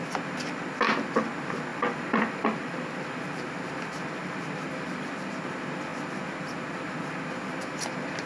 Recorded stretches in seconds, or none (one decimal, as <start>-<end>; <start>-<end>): 0.0-1.7; 3.2-8.3